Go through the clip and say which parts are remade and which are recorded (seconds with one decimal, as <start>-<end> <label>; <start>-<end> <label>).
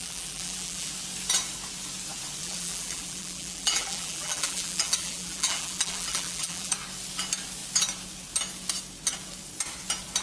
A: 0.0-0.9 remade; 0.9-2.4 recorded; 2.4-6.7 remade; 6.7-10.2 recorded